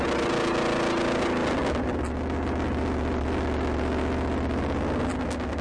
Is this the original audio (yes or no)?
yes